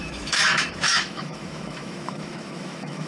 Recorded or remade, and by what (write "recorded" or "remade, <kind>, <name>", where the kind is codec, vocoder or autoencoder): remade, autoencoder, DAC-VAE